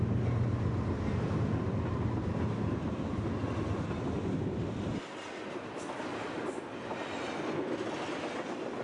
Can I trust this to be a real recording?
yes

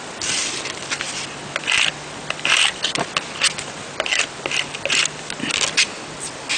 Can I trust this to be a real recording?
yes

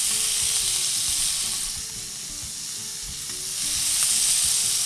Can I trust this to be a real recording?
yes